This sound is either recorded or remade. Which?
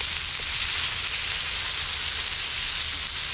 recorded